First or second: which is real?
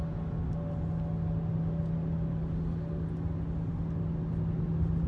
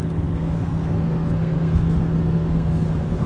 first